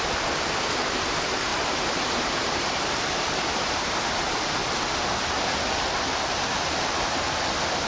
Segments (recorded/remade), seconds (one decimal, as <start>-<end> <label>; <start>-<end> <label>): 0.0-1.5 recorded; 1.5-2.9 remade; 2.9-3.5 recorded; 3.5-4.0 remade; 4.0-7.9 recorded